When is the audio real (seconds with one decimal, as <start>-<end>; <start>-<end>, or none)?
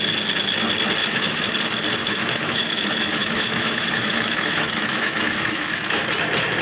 0.0-1.0; 1.5-2.0; 6.0-6.6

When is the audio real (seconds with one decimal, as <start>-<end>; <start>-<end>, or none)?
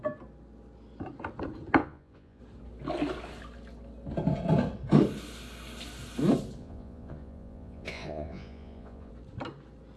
0.0-1.8; 2.4-6.6; 9.1-10.0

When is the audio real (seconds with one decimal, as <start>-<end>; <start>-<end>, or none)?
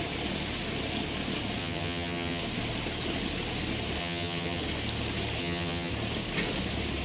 0.0-1.6; 2.4-4.0; 4.6-5.4; 5.9-7.0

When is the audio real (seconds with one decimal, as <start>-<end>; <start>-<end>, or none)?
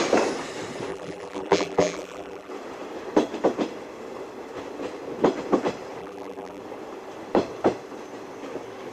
0.0-0.9; 2.5-6.0; 6.6-8.9